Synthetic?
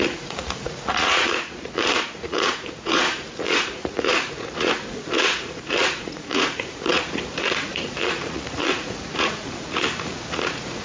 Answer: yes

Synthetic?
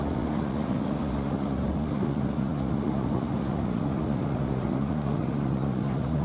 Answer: yes